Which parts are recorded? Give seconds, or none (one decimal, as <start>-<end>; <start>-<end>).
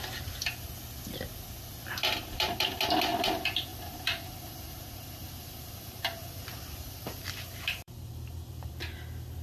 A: 0.0-3.7; 8.7-9.4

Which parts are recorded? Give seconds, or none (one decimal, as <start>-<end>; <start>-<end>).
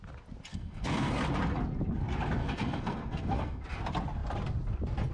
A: 0.0-0.5; 1.1-2.4; 3.6-5.1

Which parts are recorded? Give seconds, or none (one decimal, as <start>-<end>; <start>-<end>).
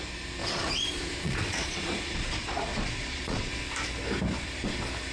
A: 0.0-0.4; 3.5-5.1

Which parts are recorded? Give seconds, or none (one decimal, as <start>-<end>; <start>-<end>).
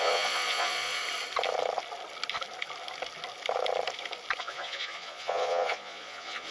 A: 1.0-4.4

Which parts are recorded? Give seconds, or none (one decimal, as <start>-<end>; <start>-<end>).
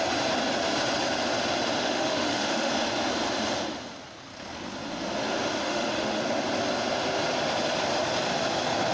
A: 0.0-1.8; 2.7-5.6; 6.2-8.9